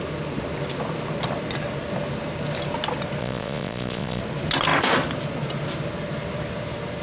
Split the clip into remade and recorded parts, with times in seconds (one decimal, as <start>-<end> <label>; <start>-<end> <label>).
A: 0.0-3.2 recorded; 3.2-4.2 remade; 4.2-7.0 recorded